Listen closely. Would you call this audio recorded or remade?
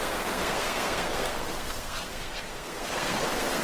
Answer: remade